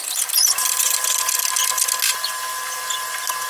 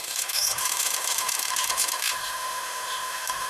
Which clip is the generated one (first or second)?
second